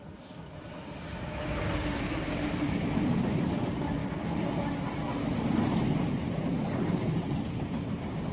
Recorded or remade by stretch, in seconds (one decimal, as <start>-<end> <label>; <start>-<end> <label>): 0.0-8.3 recorded